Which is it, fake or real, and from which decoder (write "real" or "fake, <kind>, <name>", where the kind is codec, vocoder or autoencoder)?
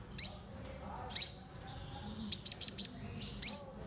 real